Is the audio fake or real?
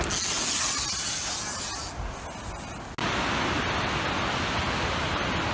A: real